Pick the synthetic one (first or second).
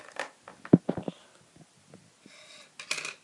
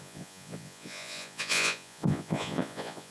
second